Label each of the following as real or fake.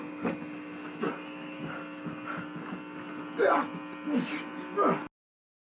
real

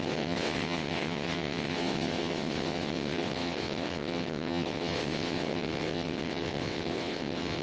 fake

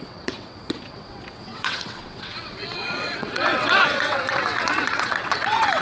fake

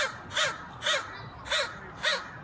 real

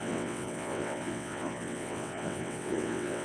fake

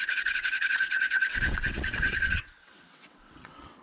fake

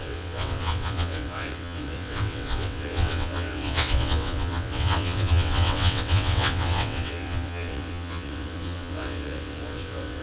fake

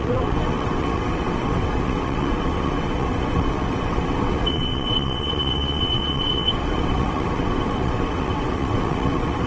fake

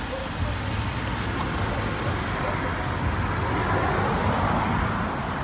real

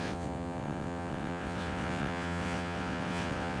fake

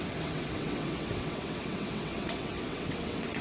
fake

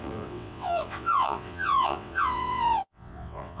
fake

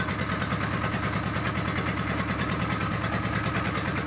real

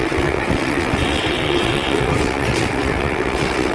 fake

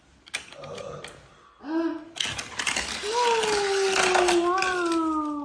real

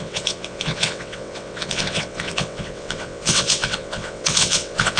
fake